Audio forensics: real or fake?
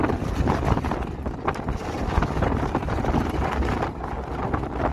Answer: real